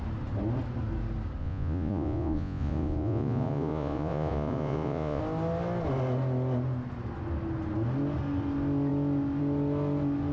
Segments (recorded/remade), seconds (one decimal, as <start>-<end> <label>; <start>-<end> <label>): 0.0-1.4 recorded; 1.4-5.2 remade; 5.2-10.3 recorded